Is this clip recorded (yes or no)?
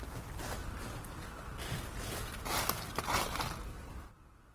yes